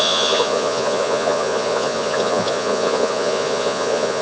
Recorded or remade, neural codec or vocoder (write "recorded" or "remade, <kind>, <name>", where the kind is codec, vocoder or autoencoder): remade, vocoder, Vocos